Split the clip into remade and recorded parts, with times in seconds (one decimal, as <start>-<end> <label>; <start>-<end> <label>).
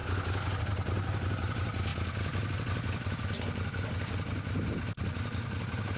0.0-6.0 recorded